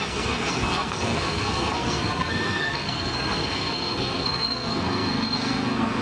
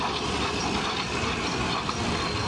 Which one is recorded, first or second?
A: second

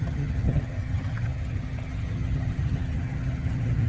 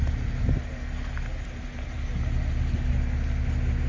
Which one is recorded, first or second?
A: second